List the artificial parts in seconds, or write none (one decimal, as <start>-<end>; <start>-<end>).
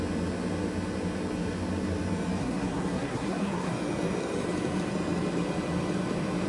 2.4-3.7